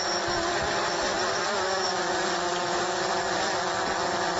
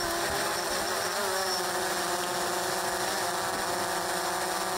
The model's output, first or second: first